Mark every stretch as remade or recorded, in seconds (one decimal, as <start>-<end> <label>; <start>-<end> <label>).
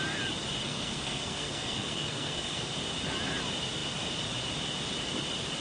0.0-0.6 recorded; 0.6-2.7 remade; 2.7-5.6 recorded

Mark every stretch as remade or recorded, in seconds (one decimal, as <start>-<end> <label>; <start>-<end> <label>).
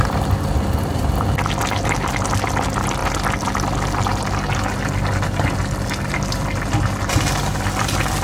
0.0-8.2 recorded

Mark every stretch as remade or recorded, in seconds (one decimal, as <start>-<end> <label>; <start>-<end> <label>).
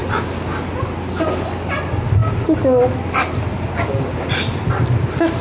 0.0-5.4 recorded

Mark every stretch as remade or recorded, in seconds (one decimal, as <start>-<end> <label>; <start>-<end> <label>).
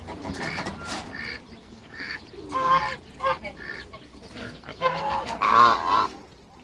0.0-1.6 recorded; 1.6-2.2 remade; 2.2-4.4 recorded; 4.4-5.5 remade; 5.5-6.6 recorded